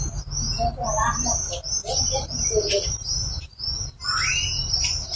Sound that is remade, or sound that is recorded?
recorded